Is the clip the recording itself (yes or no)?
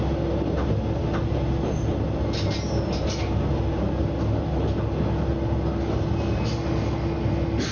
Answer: yes